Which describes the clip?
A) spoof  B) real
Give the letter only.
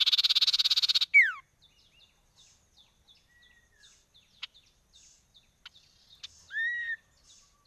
B